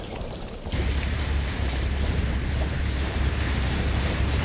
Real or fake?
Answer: fake